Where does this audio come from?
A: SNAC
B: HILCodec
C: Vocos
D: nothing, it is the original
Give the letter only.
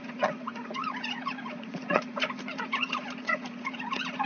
C